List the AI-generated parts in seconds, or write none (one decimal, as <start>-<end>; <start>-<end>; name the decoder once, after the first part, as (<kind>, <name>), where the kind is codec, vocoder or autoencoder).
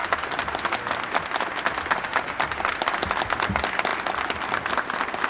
none